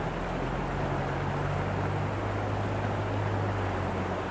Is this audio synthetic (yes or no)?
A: no